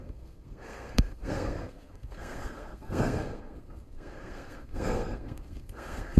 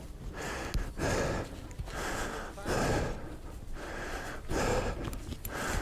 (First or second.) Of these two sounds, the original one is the second